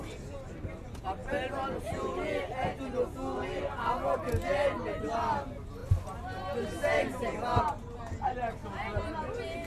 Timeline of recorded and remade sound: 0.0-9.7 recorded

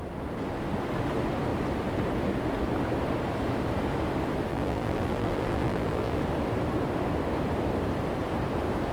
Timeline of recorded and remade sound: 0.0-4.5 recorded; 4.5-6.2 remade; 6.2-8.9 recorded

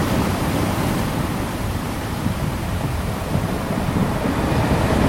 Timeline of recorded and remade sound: 0.0-3.1 remade; 3.1-5.1 recorded